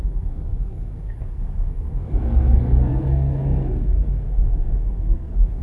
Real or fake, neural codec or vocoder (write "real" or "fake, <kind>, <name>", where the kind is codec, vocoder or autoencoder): fake, codec, SNAC